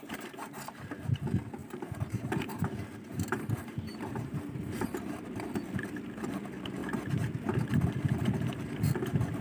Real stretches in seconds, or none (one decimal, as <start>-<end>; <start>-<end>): 0.0-1.6; 5.2-9.4